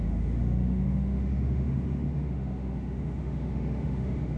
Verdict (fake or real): fake